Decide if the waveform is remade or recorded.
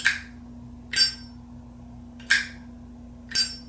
recorded